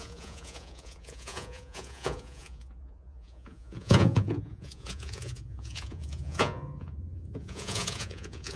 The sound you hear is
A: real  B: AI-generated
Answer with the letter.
B